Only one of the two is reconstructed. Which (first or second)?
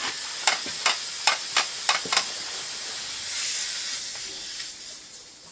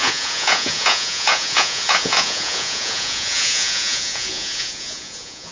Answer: second